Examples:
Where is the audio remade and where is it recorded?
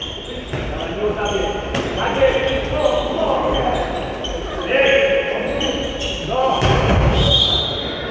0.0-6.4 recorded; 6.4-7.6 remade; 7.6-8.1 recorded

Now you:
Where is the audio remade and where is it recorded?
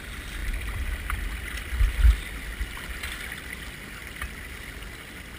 0.0-0.4 recorded; 0.4-1.6 remade; 1.6-5.4 recorded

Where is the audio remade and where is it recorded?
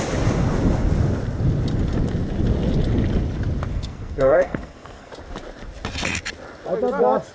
0.0-3.7 recorded; 3.7-5.1 remade; 5.1-7.3 recorded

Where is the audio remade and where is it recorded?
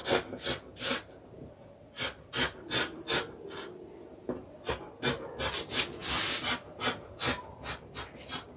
0.0-8.6 recorded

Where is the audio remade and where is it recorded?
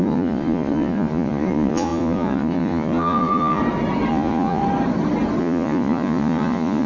0.0-3.6 remade; 3.6-4.1 recorded; 4.1-4.6 remade; 4.6-5.4 recorded; 5.4-6.9 remade